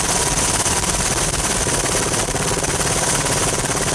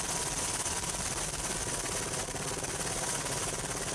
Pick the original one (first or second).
second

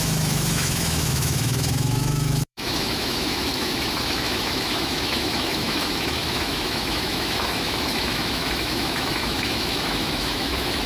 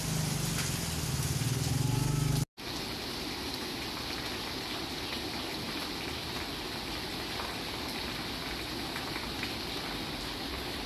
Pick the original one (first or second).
second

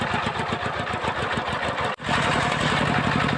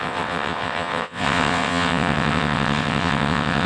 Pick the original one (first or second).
first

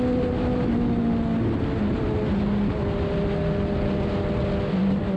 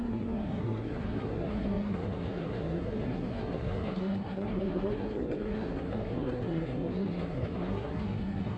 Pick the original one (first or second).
first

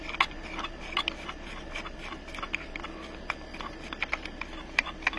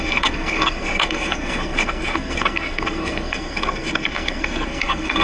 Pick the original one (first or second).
first